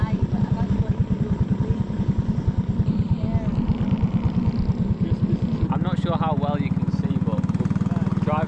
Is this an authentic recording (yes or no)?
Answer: yes